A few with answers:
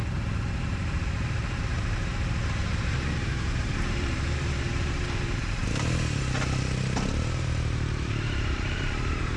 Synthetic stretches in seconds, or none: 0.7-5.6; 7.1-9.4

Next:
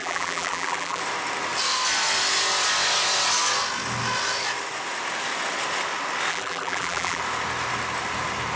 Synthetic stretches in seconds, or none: 0.0-1.0; 6.3-7.2

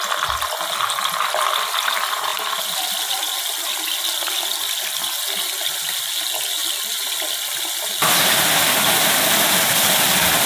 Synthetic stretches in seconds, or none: none